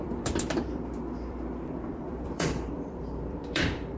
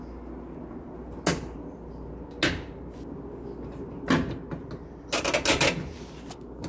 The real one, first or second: second